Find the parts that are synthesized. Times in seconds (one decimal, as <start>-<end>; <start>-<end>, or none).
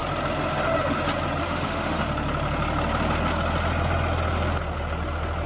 1.4-2.0